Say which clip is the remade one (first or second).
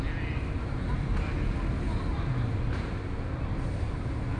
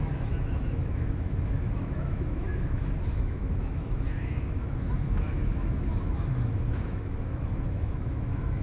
second